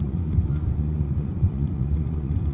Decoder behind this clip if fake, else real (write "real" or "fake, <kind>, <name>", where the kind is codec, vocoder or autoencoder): fake, vocoder, Vocos